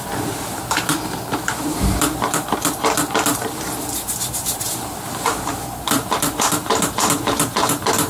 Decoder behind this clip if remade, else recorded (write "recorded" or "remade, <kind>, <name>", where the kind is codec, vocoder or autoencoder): remade, vocoder, BigVGAN v2